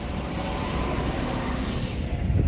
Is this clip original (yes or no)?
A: yes